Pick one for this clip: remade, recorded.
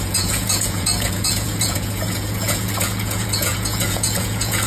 remade